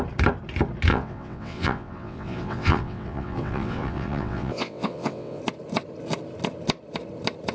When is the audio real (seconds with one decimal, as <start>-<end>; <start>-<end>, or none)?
0.0-0.9; 5.4-7.5